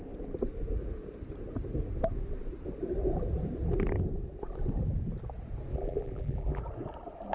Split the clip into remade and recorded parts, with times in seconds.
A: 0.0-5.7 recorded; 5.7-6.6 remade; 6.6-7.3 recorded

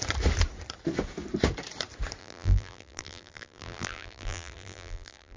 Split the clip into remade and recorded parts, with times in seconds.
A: 0.0-2.2 recorded; 2.2-5.4 remade

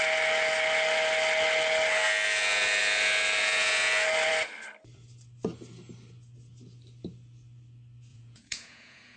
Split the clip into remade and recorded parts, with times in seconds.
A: 0.0-8.1 recorded; 8.1-9.2 remade

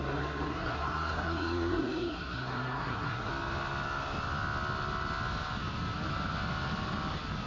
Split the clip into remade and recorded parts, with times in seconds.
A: 0.0-3.3 remade; 3.3-7.5 recorded